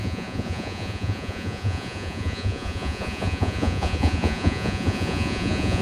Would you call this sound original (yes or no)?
no